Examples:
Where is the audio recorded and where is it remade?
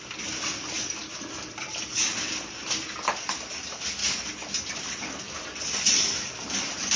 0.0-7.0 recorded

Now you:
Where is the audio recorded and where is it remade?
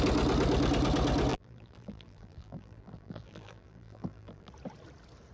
0.0-1.3 recorded; 1.3-4.5 remade; 4.5-5.3 recorded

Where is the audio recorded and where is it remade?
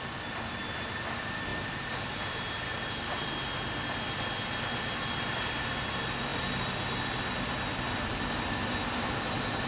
0.0-1.5 recorded; 1.5-3.3 remade; 3.3-9.7 recorded